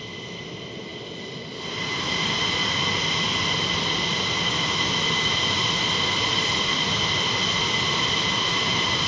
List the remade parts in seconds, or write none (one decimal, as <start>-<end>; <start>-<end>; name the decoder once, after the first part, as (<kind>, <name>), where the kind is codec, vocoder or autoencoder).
none